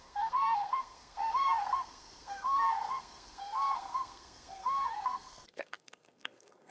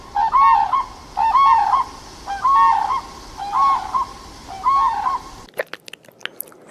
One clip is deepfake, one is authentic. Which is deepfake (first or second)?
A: first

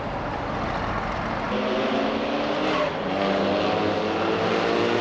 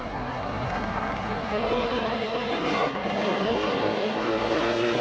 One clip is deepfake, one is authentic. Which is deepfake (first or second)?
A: second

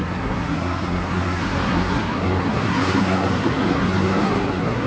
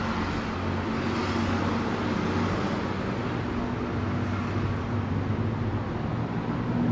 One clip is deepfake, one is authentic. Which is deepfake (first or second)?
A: first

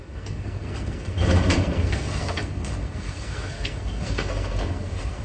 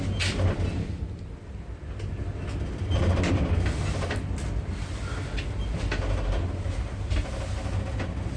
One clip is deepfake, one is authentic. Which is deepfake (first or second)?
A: first